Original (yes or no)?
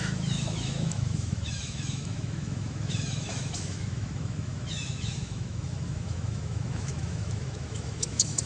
no